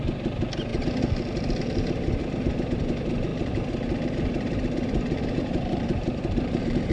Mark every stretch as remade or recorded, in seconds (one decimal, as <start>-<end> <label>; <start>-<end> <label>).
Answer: 0.0-3.3 recorded; 3.3-6.9 remade